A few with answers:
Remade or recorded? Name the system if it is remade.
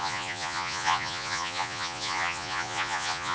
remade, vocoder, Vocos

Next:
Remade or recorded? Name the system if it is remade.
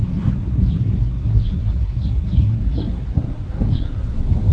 remade, codec, SNAC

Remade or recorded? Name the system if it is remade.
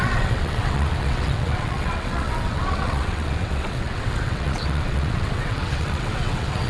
remade, vocoder, WaveNeXt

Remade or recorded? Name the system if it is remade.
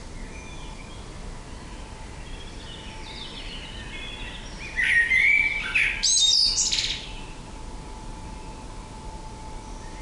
recorded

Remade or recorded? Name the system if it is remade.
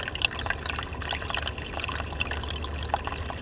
recorded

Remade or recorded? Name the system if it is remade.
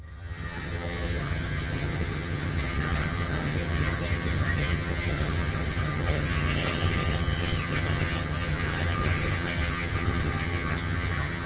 remade, vocoder, HiFi-GAN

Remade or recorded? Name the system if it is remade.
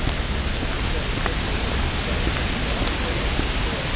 recorded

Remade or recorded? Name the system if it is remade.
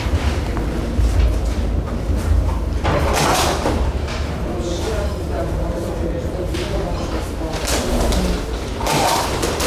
recorded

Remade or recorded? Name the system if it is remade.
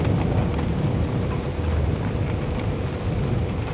remade, vocoder, BigVGAN v2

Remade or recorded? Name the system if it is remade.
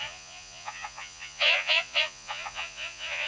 remade, vocoder, Vocos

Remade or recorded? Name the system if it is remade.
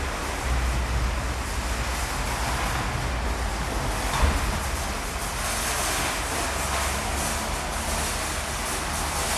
recorded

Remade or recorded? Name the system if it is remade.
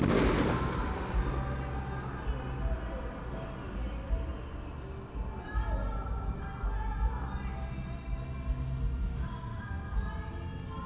recorded